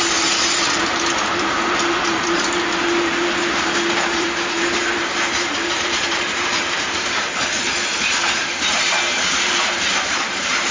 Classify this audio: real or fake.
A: fake